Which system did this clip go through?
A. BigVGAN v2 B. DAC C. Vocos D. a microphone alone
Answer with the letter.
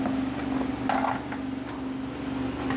D